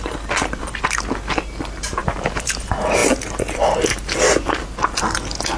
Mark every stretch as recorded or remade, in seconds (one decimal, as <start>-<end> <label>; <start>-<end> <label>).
0.0-2.0 recorded; 2.0-2.5 remade; 2.5-5.6 recorded